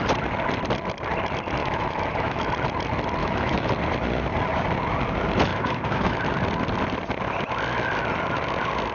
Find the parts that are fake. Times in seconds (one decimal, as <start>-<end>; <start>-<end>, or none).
1.6-2.5; 3.2-3.7; 5.5-6.2